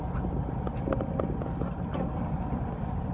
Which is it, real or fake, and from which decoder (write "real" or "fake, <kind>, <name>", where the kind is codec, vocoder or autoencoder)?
real